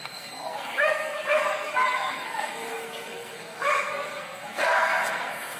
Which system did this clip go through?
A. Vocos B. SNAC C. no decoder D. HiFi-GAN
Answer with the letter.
B